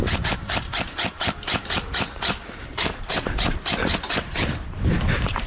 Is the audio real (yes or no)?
no